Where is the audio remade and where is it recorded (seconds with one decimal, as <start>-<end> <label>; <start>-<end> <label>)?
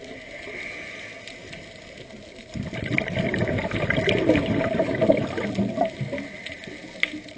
0.0-7.4 recorded